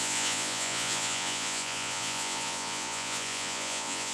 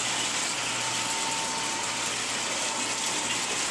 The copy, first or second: first